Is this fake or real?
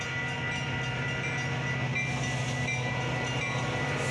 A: real